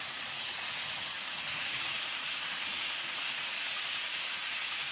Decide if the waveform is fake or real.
fake